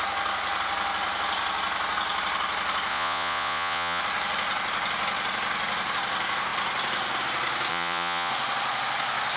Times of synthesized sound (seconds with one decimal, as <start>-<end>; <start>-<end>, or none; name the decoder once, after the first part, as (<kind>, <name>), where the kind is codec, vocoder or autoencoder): 2.9-4.0 (vocoder, Vocos); 7.7-8.3